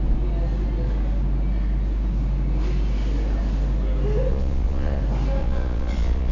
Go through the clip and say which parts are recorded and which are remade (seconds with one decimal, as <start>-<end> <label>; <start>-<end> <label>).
0.0-4.3 recorded; 4.3-5.0 remade; 5.0-5.4 recorded; 5.4-6.3 remade